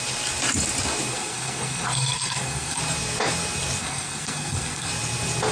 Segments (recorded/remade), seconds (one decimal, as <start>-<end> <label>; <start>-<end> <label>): 0.0-1.1 recorded; 1.1-2.8 remade; 2.8-3.8 recorded; 3.8-4.9 remade; 4.9-5.5 recorded